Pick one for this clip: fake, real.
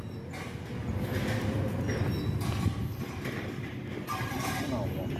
real